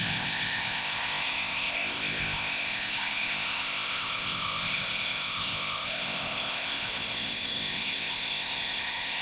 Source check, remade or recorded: remade